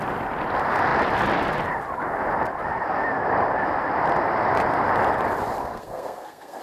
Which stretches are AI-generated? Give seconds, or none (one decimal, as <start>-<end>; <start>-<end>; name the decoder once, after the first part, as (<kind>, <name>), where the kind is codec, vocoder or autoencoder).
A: 5.6-6.6 (codec, SNAC)